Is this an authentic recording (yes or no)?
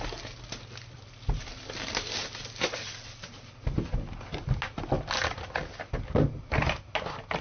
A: yes